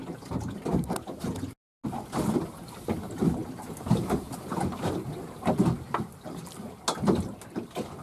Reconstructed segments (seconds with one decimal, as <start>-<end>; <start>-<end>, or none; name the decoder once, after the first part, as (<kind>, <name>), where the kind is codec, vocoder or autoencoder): none